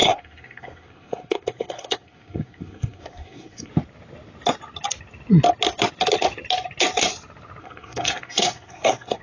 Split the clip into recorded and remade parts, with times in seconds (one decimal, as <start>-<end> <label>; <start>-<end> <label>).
0.0-3.7 remade; 3.7-7.6 recorded; 7.6-9.2 remade